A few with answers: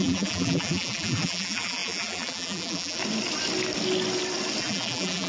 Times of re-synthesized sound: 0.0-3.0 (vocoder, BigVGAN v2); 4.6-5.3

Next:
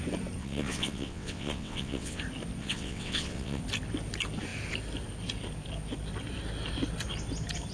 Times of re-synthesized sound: 0.4-2.2 (vocoder, WaveNeXt); 2.6-3.6

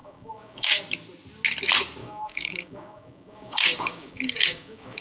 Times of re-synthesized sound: 0.0-0.8 (codec, DAC); 2.0-5.0

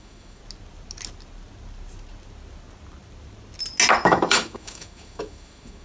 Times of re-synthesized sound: 0.0-0.4 (autoencoder, DAC-VAE); 3.9-5.8